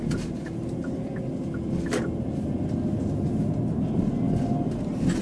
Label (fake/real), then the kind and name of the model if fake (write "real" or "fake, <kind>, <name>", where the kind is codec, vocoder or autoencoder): real